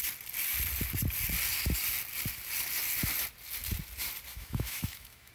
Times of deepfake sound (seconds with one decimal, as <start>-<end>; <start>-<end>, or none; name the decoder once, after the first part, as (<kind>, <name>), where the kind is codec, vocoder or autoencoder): 4.3-5.3 (autoencoder, DAC-VAE)